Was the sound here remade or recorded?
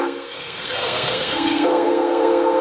remade